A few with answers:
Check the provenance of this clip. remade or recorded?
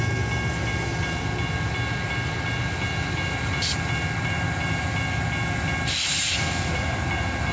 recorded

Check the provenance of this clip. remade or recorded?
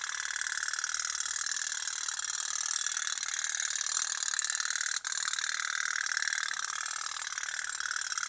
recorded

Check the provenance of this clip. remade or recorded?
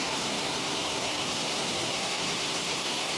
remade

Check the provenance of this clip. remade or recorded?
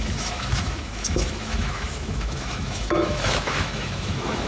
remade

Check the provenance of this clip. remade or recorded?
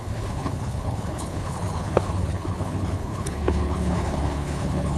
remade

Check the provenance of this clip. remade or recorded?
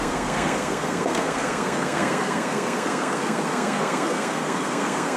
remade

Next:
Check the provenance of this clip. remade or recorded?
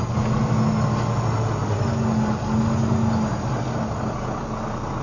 recorded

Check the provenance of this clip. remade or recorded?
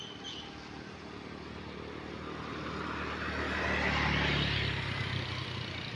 recorded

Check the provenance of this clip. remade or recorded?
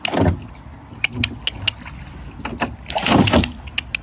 recorded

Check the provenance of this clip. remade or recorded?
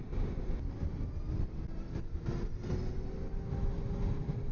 recorded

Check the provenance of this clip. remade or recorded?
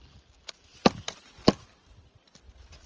recorded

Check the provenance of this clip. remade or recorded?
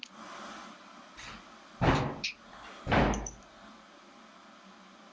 recorded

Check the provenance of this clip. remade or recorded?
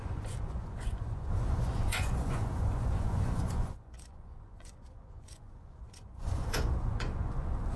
remade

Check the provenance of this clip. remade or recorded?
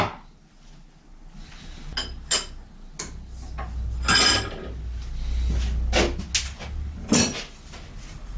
recorded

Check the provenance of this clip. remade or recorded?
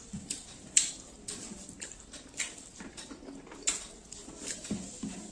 recorded